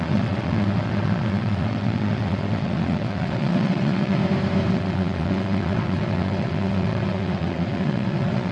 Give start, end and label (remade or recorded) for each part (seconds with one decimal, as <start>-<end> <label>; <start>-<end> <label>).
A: 0.0-4.2 remade; 4.2-4.7 recorded; 4.7-8.5 remade